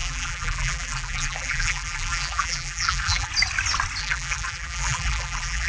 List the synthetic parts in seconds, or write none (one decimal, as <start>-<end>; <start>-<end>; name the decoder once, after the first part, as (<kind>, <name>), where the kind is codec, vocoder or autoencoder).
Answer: 0.0-3.3 (vocoder, BigVGAN v2); 4.0-5.7